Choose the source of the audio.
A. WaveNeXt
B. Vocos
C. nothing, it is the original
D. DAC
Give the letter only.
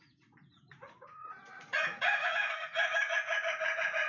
B